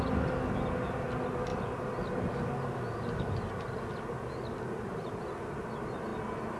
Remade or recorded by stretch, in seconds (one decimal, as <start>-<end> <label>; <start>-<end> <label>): 0.0-6.6 recorded